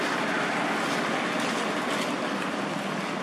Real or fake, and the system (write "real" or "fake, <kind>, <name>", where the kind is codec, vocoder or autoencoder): real